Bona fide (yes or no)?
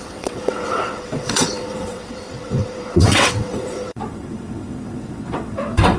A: no